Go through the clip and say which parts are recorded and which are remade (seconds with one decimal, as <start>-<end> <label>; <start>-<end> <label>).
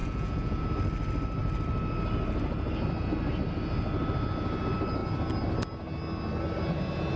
0.0-0.6 remade; 0.6-7.2 recorded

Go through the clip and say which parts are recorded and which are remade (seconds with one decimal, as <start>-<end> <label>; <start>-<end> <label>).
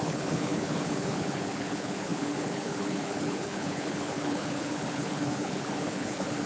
0.0-6.5 remade